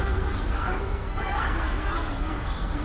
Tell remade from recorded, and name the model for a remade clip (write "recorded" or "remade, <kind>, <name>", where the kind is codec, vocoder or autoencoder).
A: remade, codec, SNAC